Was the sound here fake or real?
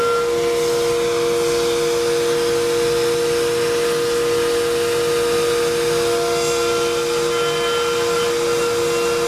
real